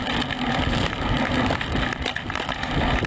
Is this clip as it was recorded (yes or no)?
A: yes